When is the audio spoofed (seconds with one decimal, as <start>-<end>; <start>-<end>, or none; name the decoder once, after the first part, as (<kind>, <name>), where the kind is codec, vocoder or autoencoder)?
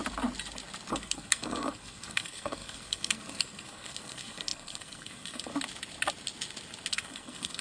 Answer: 0.9-5.5 (codec, SNAC); 6.9-7.6